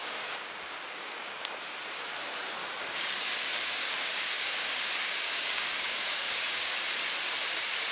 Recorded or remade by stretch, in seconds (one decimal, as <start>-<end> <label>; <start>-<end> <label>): 0.0-1.5 remade; 1.5-2.6 recorded; 2.6-6.7 remade; 6.7-7.9 recorded